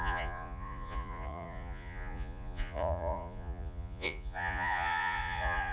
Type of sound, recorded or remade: remade